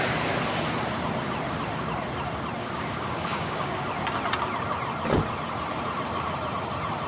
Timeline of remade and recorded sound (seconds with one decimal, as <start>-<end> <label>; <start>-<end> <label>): 0.0-2.6 recorded; 2.6-3.9 remade; 3.9-7.1 recorded